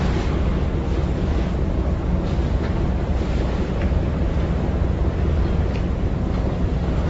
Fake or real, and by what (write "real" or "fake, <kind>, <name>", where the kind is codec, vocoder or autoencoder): real